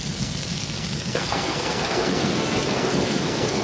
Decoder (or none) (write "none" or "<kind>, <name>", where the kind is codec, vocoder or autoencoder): codec, SNAC